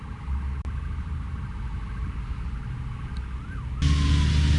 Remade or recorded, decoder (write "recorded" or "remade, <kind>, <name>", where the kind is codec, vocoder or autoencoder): recorded